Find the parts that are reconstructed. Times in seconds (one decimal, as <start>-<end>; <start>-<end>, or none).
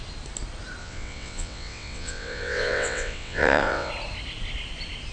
0.8-3.9